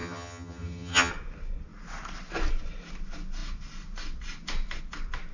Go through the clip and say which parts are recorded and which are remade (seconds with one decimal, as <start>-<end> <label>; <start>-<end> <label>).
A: 0.0-1.1 remade; 1.1-5.3 recorded